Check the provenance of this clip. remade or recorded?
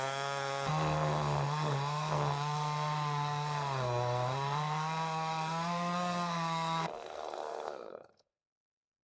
remade